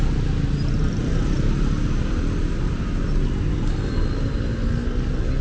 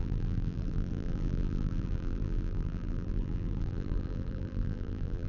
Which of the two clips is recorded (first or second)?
first